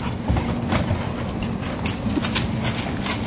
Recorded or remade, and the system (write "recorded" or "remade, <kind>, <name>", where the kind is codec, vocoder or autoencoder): recorded